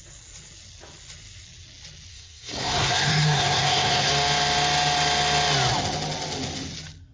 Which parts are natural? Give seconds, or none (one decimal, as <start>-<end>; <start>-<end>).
0.0-2.1; 4.1-7.1

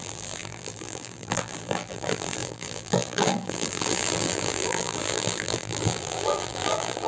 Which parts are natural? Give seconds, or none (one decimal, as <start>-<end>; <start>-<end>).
none